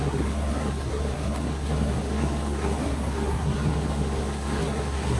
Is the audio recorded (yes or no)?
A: no